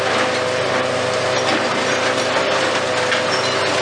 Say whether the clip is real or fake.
real